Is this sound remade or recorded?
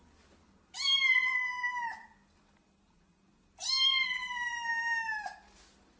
recorded